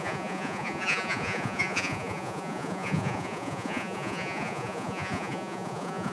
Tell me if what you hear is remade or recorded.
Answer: remade